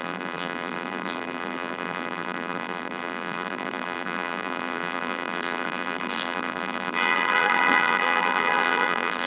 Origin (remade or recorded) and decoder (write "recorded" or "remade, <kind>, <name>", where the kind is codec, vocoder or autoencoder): remade, vocoder, BigVGAN v2